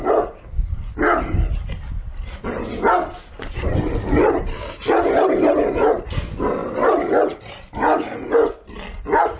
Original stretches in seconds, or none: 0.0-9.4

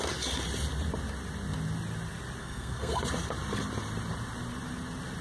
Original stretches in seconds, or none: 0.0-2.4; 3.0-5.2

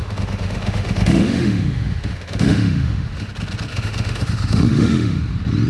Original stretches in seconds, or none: 3.3-3.7; 5.2-5.7

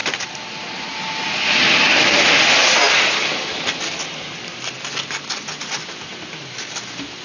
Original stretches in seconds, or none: 0.0-7.2

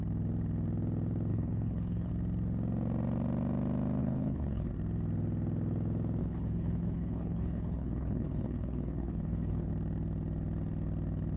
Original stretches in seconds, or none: 0.0-1.3; 2.1-4.0; 4.7-6.2; 9.7-11.4

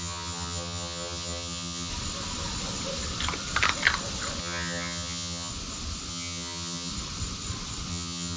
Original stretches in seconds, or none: 1.9-4.4; 5.5-6.1; 6.9-7.9